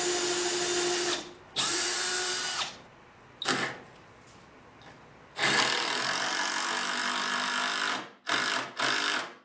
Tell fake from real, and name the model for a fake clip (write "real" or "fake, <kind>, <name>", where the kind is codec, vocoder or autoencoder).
real